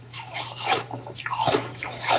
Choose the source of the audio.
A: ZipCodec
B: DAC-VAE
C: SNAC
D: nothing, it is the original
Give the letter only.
B